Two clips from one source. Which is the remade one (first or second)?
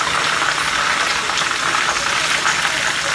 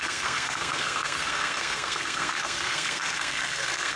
second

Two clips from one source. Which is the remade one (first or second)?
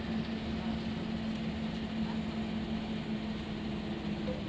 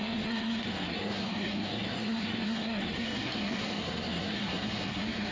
second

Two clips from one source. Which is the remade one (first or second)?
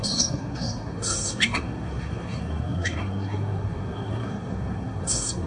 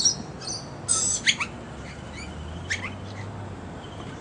first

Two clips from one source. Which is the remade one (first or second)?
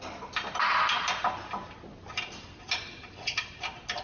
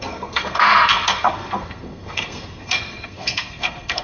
second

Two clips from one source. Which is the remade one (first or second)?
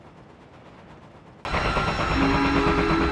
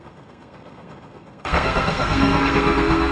second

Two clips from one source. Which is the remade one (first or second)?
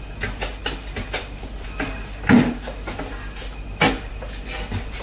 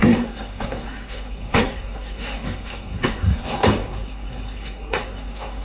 second